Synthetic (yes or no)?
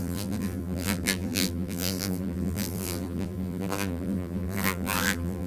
yes